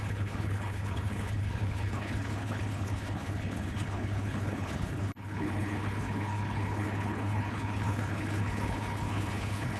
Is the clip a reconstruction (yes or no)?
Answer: yes